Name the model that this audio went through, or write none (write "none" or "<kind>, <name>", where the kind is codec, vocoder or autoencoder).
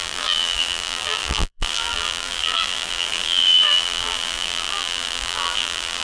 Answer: vocoder, BigVGAN v2